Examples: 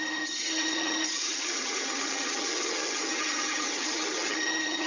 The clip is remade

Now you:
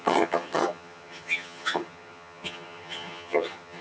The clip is remade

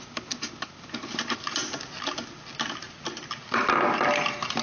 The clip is recorded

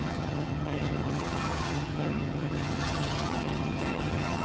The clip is remade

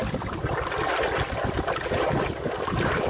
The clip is recorded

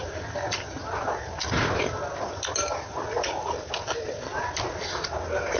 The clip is recorded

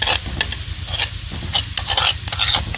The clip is recorded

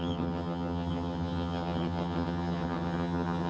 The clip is remade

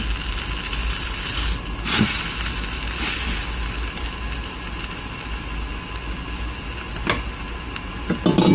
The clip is recorded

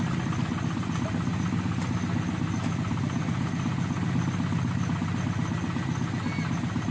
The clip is recorded